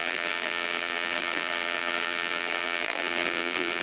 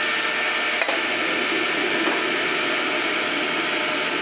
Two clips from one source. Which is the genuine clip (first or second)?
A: second